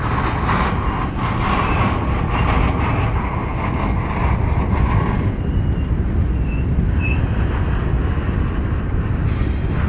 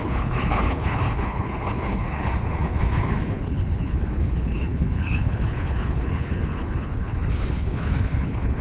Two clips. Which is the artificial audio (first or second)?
second